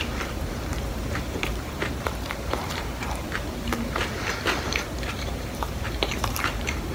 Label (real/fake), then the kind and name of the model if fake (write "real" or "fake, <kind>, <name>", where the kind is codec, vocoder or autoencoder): fake, vocoder, BigVGAN v2